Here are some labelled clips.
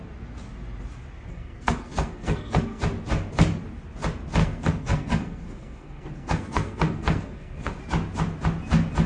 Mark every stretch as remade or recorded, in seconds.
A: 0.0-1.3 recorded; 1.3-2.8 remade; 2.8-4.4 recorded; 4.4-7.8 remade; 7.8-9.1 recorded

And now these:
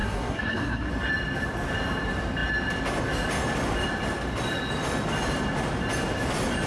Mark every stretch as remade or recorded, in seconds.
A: 0.0-0.9 remade; 0.9-6.7 recorded

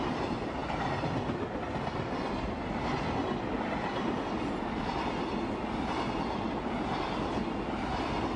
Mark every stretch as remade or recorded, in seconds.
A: 0.0-8.4 recorded

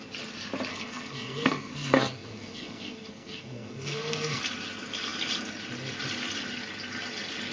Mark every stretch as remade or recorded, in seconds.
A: 0.0-0.7 recorded; 0.7-4.4 remade; 4.4-7.5 recorded

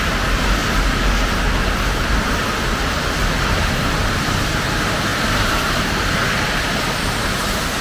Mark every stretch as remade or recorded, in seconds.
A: 0.0-7.8 recorded